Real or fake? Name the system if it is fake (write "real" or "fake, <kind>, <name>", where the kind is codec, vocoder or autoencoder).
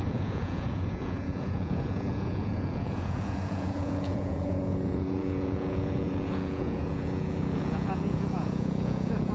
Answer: fake, vocoder, Vocos